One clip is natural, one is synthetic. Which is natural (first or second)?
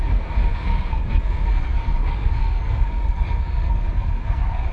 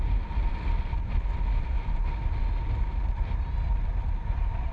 second